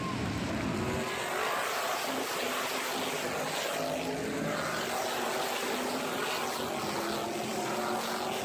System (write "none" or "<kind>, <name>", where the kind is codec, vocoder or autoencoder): none